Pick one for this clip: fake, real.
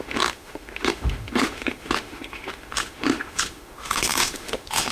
fake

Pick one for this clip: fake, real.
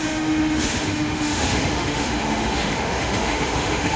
fake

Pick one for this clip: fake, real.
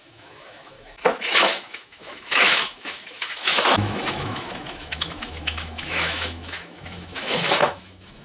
fake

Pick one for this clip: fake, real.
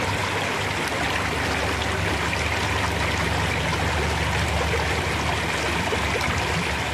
real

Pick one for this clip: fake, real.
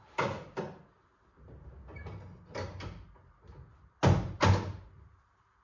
real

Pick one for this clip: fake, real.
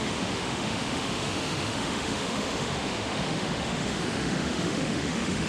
fake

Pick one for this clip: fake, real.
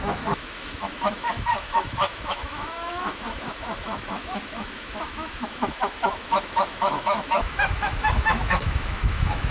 fake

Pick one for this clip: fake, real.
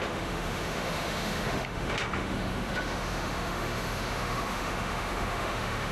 fake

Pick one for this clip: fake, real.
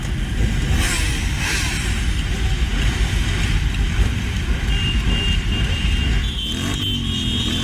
real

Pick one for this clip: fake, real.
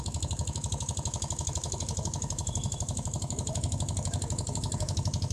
fake